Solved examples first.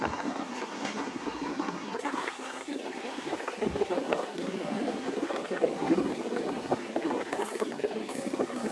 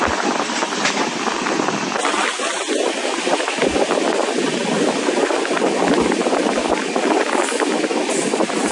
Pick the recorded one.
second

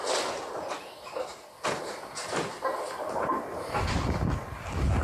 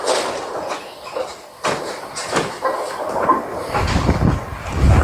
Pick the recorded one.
first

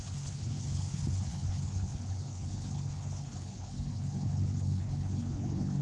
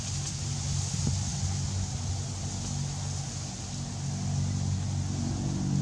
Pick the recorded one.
second